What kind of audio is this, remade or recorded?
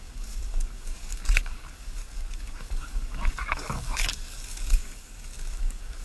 remade